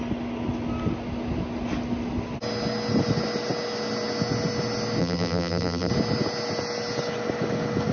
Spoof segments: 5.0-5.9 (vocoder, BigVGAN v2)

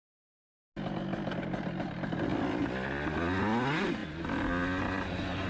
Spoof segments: none

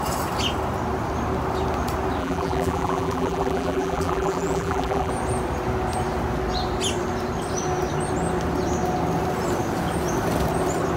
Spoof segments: 2.2-5.1 (vocoder, BigVGAN v2)

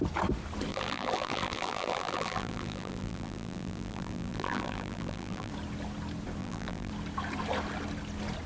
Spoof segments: 0.7-5.5 (vocoder, BigVGAN v2); 6.4-6.9

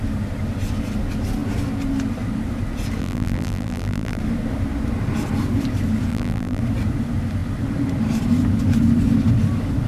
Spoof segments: 3.0-4.2 (vocoder, BigVGAN v2); 6.1-6.6

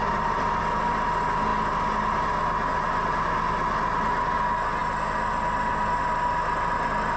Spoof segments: 0.0-0.6 (vocoder, BigVGAN v2)

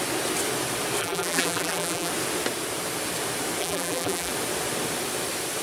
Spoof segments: 1.0-2.1 (vocoder, BigVGAN v2); 3.6-4.3